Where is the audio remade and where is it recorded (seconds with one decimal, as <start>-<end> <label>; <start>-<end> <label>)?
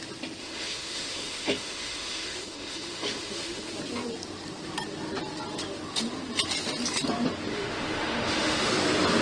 0.0-0.4 recorded; 0.4-3.7 remade; 3.7-7.5 recorded; 7.5-8.7 remade; 8.7-9.2 recorded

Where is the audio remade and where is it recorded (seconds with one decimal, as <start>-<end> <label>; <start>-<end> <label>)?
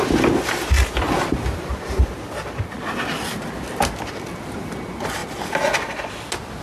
0.0-6.6 recorded